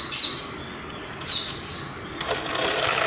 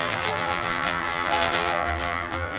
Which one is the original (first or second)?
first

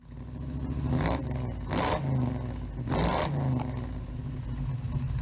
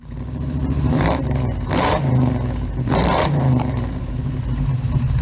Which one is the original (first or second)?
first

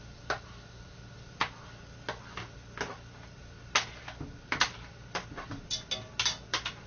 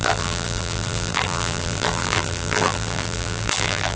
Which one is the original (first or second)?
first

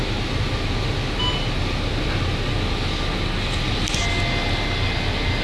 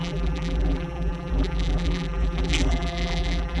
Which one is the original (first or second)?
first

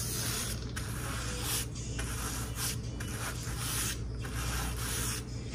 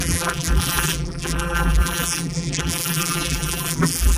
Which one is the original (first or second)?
first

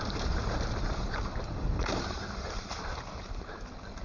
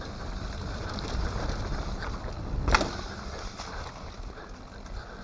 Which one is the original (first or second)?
second